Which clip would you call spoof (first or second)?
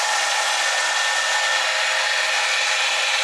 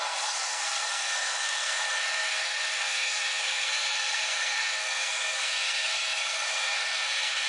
second